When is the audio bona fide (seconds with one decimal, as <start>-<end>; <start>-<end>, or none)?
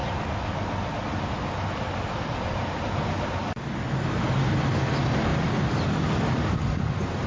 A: 0.0-7.3